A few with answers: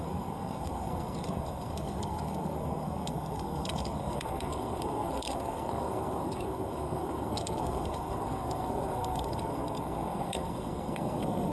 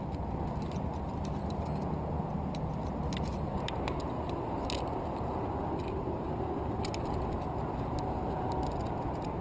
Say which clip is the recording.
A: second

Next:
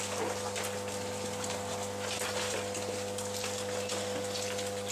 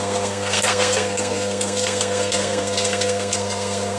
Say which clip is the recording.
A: first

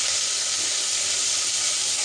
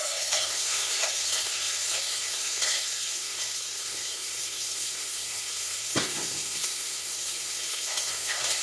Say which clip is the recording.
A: first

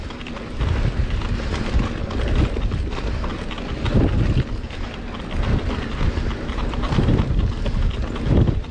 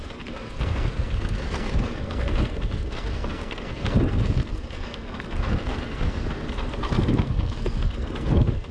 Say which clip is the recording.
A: first